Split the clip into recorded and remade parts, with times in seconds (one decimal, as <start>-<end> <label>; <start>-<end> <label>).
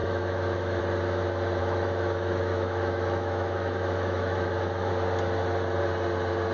0.0-0.8 remade; 0.8-1.6 recorded; 1.6-4.9 remade; 4.9-6.5 recorded